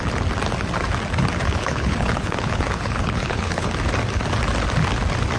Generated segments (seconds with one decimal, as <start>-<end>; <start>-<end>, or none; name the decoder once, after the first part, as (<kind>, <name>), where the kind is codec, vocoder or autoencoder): 1.4-3.7 (codec, HILCodec)